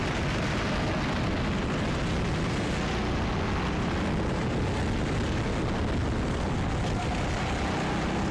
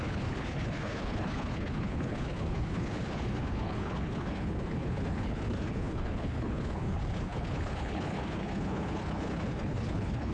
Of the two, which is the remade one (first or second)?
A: second